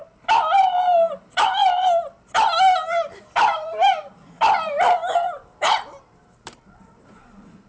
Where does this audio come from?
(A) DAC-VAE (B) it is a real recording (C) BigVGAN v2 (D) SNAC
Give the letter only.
C